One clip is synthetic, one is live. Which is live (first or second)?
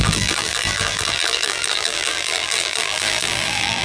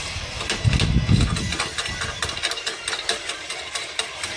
second